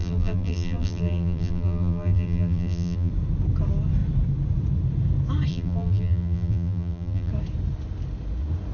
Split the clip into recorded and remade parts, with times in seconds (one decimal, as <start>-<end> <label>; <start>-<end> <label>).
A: 0.0-3.1 remade; 3.1-5.5 recorded; 5.5-7.3 remade; 7.3-8.7 recorded